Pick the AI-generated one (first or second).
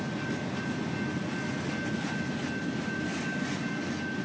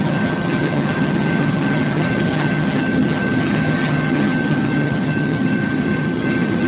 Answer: second